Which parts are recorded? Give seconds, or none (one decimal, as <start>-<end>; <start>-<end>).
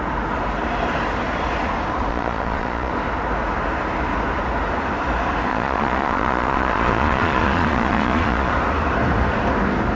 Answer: 0.0-2.1; 2.9-5.5; 8.5-9.9